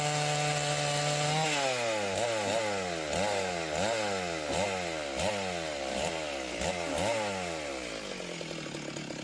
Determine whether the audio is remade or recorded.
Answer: recorded